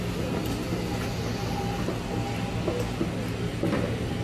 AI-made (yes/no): no